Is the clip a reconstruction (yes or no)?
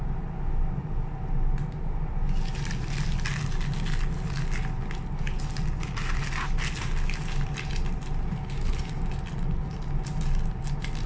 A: no